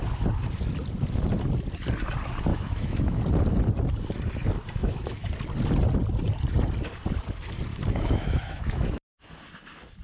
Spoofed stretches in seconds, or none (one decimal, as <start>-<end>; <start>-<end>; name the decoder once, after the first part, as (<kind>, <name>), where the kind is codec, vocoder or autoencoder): 2.5-3.2 (autoencoder, DAC-VAE); 4.8-5.3; 7.7-9.3